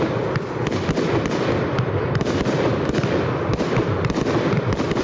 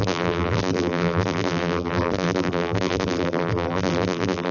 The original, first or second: first